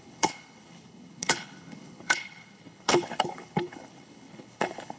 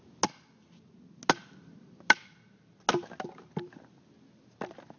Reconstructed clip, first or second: first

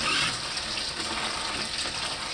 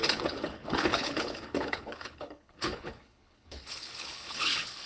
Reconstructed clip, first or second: second